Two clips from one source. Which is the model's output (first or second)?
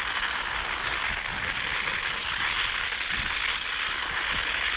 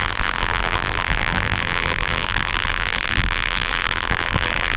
second